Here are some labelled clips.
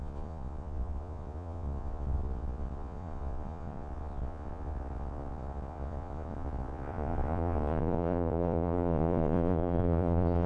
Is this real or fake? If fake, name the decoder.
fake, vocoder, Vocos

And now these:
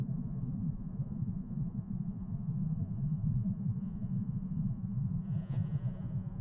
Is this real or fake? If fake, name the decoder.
fake, vocoder, Vocos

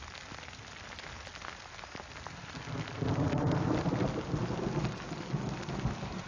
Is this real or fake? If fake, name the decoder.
real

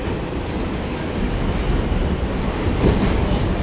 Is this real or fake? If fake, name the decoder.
real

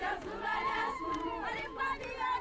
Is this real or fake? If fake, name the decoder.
fake, vocoder, Vocos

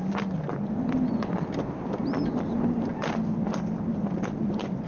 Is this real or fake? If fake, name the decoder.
real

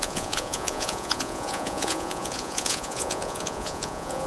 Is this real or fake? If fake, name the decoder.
fake, vocoder, Vocos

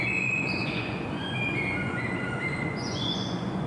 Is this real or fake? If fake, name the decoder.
fake, vocoder, Vocos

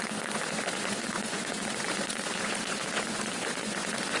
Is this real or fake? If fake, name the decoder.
fake, vocoder, Vocos